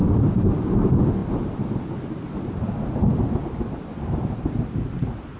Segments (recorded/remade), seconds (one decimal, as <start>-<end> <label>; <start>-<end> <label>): 0.0-5.4 recorded